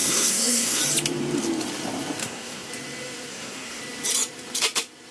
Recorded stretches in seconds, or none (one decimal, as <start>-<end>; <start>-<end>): 0.8-2.2; 2.7-3.3; 3.8-5.1

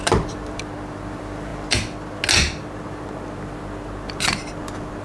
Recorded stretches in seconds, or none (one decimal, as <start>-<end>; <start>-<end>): 0.0-5.0

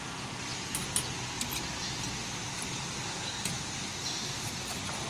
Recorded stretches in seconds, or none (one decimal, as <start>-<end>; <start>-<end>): 0.0-5.1

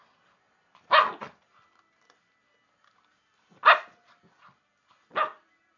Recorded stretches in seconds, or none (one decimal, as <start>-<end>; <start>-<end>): 0.0-5.8

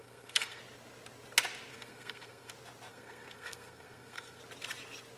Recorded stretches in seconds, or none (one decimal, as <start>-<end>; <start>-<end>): 0.6-1.7; 2.5-2.9; 4.4-5.2

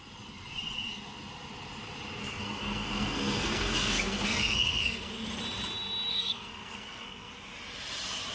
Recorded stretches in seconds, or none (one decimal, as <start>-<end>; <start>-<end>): 0.0-2.2; 5.1-6.1; 7.3-8.3